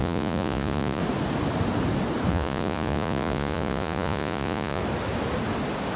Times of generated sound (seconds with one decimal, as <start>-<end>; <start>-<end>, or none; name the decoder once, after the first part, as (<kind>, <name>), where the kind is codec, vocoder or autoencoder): 0.0-1.0 (vocoder, Vocos); 2.3-4.8

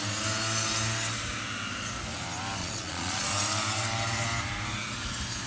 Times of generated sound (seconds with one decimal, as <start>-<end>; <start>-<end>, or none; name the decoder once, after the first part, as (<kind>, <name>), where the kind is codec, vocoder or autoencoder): 2.6-3.3 (vocoder, Vocos)

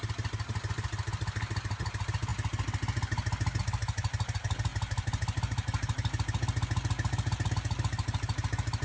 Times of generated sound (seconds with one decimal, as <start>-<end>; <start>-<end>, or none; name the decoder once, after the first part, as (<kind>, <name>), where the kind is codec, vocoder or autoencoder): none

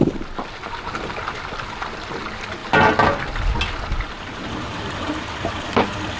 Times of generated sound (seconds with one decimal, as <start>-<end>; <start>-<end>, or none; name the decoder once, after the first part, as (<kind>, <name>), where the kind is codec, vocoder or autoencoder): none

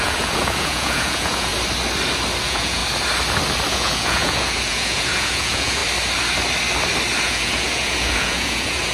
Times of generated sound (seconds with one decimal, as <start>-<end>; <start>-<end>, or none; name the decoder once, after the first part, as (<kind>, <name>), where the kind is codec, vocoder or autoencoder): 0.0-1.5 (vocoder, Vocos); 2.4-2.8; 3.7-5.8; 7.2-8.9